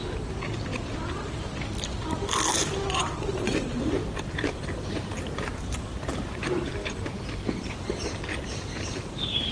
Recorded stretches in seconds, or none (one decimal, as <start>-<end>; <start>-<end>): 0.0-3.0; 7.9-8.3

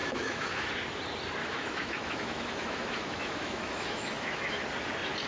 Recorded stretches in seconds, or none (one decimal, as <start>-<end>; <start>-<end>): 0.7-1.4; 4.6-5.3

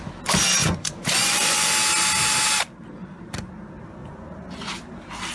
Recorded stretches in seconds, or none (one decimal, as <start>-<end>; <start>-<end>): 0.0-0.6; 1.7-4.0; 4.7-5.3

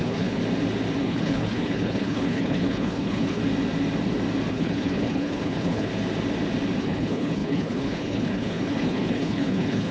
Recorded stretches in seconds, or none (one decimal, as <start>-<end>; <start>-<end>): 0.4-1.0; 3.4-4.5; 5.9-6.8

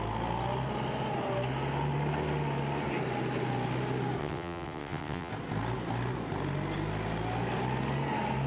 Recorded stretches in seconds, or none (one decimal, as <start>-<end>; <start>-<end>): 0.0-4.2; 5.3-8.5

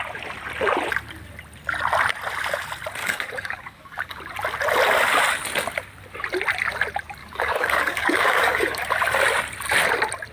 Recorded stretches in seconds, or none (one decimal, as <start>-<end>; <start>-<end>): 0.0-3.0; 4.2-7.2; 8.8-10.3

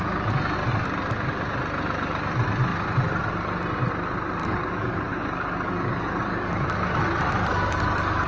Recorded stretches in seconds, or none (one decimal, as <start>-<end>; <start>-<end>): 0.0-4.4; 6.6-7.5